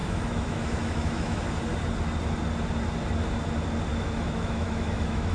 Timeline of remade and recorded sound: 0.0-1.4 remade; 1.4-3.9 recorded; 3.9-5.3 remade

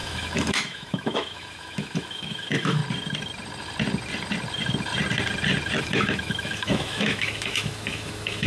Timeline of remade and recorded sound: 0.0-2.8 remade; 2.8-5.8 recorded; 5.8-8.5 remade

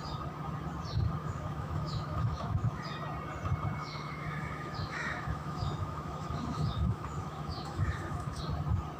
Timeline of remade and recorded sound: 0.0-1.2 recorded; 1.2-2.8 remade; 2.8-3.8 recorded; 3.8-8.4 remade; 8.4-9.0 recorded

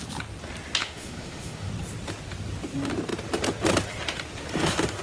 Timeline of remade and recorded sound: 0.0-0.8 recorded; 0.8-1.7 remade; 1.7-5.0 recorded

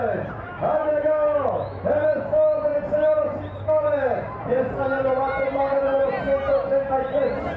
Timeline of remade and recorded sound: 0.0-0.8 recorded; 0.8-1.8 remade; 1.8-7.6 recorded